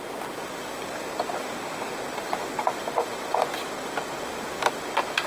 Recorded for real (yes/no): yes